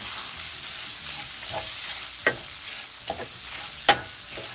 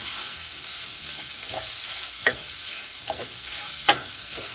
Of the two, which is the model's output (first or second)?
second